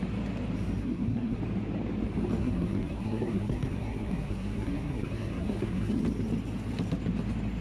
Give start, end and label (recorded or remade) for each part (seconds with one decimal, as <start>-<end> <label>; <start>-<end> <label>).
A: 0.0-0.8 recorded; 0.8-1.4 remade; 1.4-2.4 recorded; 2.4-6.0 remade; 6.0-7.6 recorded